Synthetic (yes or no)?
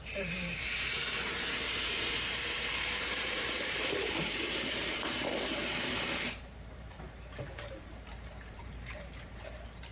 yes